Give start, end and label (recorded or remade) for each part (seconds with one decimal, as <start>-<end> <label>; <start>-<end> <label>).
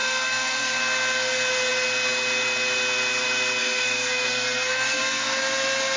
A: 0.0-0.8 remade; 0.8-3.6 recorded; 3.6-5.4 remade; 5.4-6.0 recorded